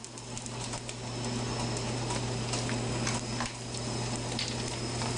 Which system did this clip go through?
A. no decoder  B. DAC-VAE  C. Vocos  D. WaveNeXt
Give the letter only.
A